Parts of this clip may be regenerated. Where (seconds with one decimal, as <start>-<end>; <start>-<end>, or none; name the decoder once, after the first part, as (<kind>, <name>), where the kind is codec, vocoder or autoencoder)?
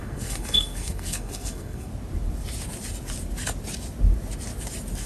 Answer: 0.0-1.9 (codec, SNAC)